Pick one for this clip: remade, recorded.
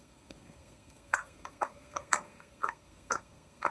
remade